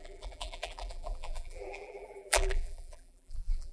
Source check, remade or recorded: remade